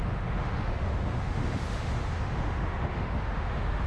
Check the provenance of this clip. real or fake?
fake